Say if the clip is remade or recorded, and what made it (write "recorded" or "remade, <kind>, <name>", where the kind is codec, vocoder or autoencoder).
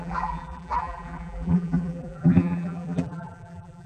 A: remade, vocoder, BigVGAN v2